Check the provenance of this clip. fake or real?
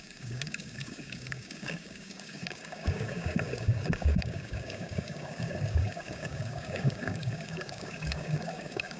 fake